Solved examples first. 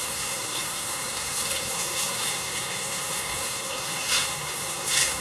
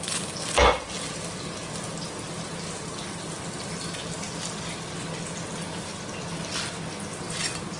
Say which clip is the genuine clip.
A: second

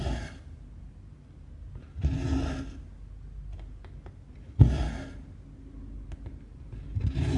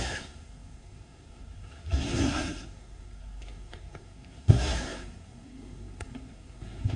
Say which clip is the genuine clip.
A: first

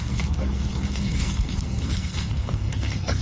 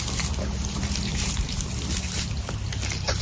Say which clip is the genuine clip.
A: second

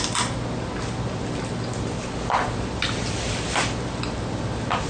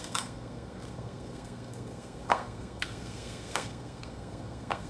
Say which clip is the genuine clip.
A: first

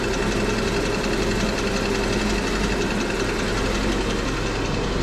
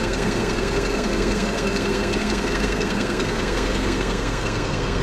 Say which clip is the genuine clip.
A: first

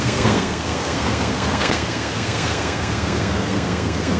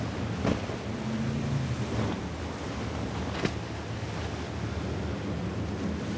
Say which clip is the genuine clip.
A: second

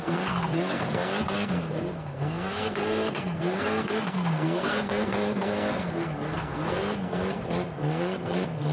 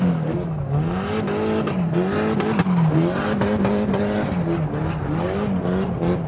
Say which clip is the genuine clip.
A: second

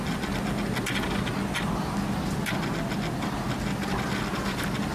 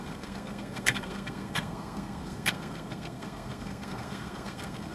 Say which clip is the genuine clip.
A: first